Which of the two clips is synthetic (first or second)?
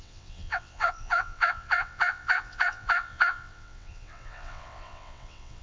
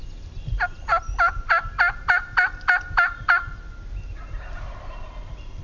first